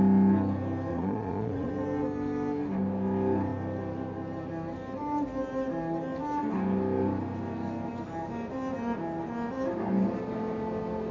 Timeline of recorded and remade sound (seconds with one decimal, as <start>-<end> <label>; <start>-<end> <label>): 0.0-0.9 recorded; 0.9-1.7 remade; 1.7-11.1 recorded